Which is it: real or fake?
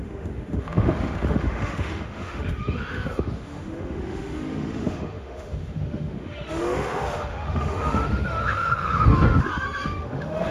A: fake